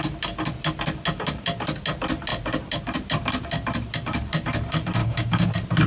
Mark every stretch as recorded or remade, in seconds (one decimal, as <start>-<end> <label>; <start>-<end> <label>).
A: 0.0-5.0 recorded; 5.0-5.5 remade; 5.5-5.9 recorded